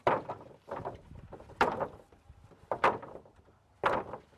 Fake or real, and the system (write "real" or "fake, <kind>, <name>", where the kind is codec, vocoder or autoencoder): real